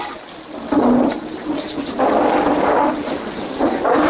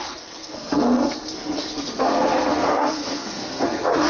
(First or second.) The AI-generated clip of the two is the second